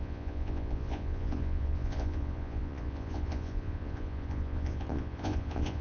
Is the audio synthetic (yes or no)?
yes